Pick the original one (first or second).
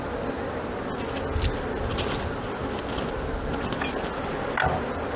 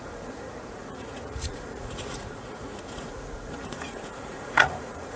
first